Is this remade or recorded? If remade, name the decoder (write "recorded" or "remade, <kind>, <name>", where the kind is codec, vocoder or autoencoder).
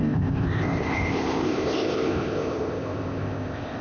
remade, codec, ZipCodec